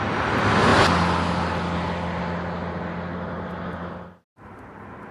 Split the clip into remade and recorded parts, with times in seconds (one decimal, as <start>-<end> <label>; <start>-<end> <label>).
0.0-3.1 recorded; 3.1-4.5 remade; 4.5-5.1 recorded